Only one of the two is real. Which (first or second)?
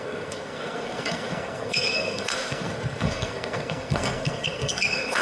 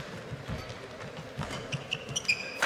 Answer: second